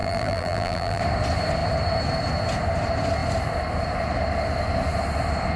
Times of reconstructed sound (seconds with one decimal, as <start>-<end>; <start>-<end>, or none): 0.0-1.0